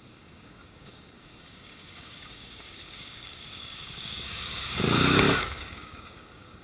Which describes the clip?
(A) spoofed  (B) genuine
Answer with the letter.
A